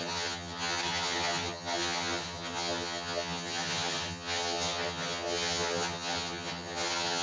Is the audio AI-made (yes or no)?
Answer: yes